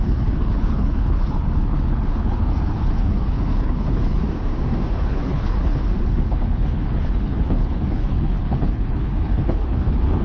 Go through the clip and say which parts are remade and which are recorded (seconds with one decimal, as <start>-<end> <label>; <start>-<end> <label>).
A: 0.0-4.2 remade; 4.2-4.9 recorded; 4.9-10.2 remade